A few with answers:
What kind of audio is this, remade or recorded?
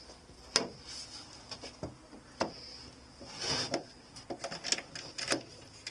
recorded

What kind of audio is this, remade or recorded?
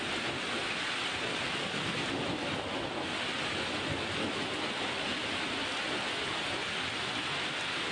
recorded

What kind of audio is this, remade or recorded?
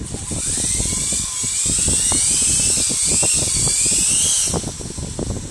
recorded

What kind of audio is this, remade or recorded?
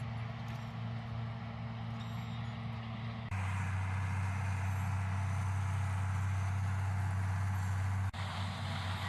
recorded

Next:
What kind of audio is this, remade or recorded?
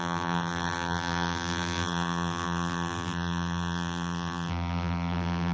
remade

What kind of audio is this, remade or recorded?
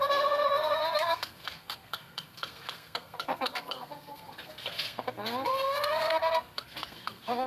remade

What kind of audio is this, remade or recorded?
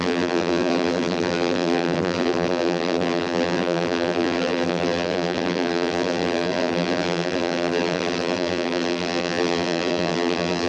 remade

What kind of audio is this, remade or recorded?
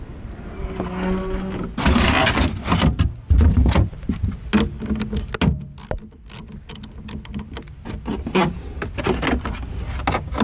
recorded